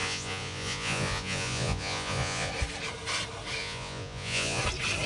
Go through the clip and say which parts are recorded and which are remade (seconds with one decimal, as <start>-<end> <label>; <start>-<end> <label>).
0.0-2.5 remade; 2.5-3.6 recorded; 3.6-4.6 remade; 4.6-5.1 recorded